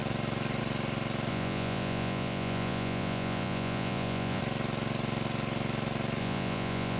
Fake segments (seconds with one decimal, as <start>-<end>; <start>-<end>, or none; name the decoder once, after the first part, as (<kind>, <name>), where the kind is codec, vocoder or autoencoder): 1.3-4.4 (vocoder, Vocos); 6.2-7.0